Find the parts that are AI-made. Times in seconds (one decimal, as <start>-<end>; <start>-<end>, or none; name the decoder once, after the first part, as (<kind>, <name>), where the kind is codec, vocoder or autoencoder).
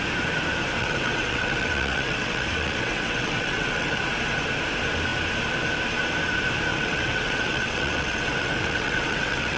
0.8-4.0 (vocoder, WaveNeXt); 6.7-9.6